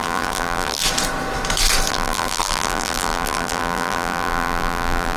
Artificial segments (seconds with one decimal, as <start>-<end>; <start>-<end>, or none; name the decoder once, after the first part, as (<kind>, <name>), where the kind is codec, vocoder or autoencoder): 0.0-0.8 (vocoder, BigVGAN v2); 1.9-5.2